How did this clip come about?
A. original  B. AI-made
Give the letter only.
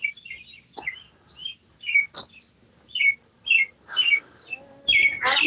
A